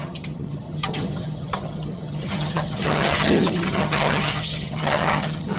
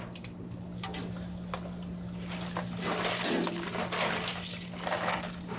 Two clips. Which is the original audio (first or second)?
second